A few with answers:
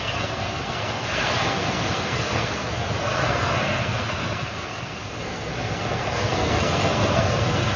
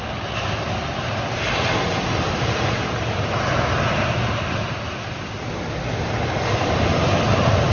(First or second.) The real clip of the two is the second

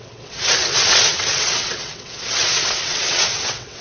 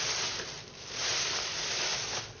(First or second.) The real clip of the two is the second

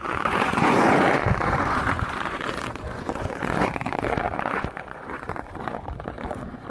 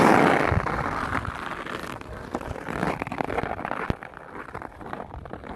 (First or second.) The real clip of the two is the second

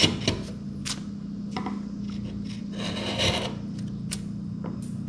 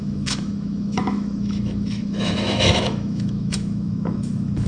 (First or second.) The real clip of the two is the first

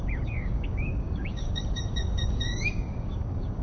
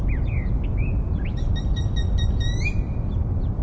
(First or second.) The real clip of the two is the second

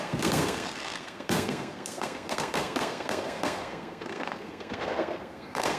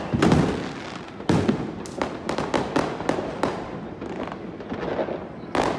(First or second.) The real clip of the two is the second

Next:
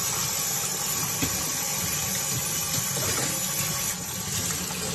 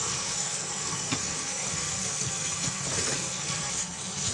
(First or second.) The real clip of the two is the first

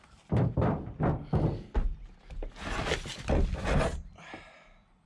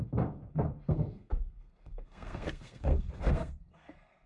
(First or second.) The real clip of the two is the first